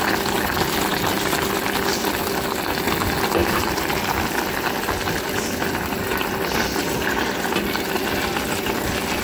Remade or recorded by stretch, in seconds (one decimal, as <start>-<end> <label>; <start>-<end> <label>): 0.0-9.2 recorded